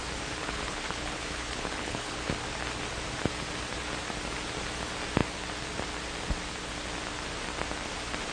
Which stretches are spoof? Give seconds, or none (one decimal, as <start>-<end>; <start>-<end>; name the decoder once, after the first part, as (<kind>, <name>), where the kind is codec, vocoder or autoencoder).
0.4-2.3 (codec, HILCodec)